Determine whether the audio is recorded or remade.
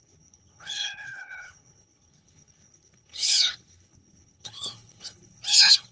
remade